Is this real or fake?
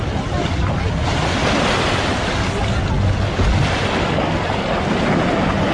real